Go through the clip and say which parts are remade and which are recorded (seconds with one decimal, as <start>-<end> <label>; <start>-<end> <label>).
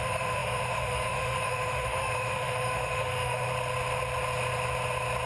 0.0-3.5 remade; 3.5-5.3 recorded